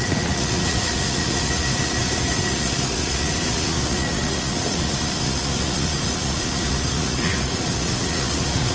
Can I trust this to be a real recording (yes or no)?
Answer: no